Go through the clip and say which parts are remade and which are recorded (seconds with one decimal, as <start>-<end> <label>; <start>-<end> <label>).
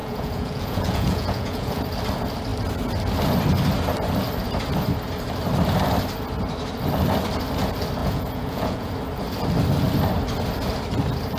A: 0.0-1.8 remade; 1.8-8.0 recorded; 8.0-8.9 remade; 8.9-11.4 recorded